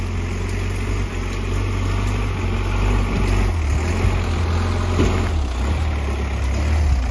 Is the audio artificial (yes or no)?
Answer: no